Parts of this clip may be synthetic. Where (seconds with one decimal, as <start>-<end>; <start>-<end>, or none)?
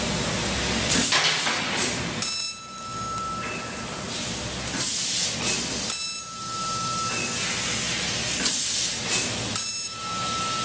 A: none